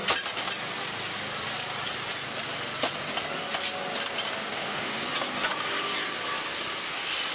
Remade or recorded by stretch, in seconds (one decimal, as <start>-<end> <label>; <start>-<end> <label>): 0.0-4.5 recorded; 4.5-5.0 remade; 5.0-7.3 recorded